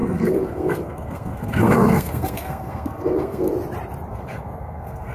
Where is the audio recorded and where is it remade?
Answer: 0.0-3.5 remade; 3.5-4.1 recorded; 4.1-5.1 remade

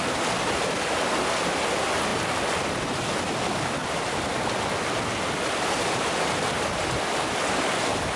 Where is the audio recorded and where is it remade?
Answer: 0.0-8.2 recorded

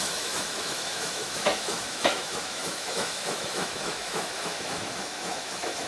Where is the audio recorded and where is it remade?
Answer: 0.0-5.9 remade

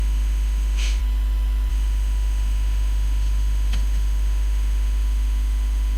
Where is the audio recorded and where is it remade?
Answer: 0.0-1.0 remade; 1.0-1.7 recorded; 1.7-6.0 remade

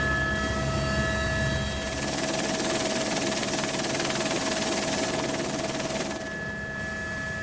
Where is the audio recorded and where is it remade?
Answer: 0.0-7.4 recorded